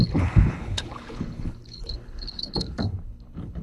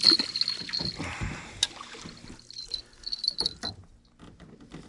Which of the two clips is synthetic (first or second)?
first